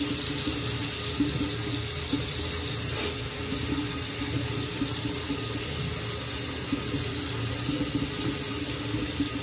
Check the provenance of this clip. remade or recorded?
recorded